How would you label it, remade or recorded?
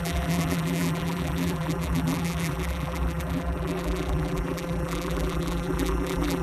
remade